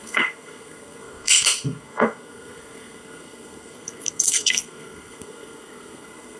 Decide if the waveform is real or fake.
fake